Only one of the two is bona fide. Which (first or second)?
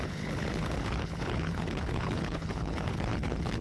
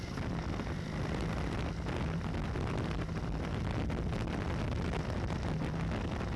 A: second